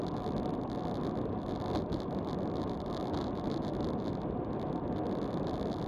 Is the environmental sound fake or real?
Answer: real